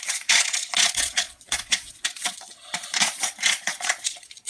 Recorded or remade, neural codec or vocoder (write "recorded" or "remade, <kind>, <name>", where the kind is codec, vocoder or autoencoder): remade, vocoder, Vocos